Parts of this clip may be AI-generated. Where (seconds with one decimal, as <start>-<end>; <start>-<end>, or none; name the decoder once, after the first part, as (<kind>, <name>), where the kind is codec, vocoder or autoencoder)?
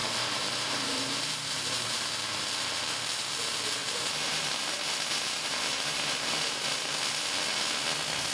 0.0-2.1 (vocoder, BigVGAN v2); 3.8-6.9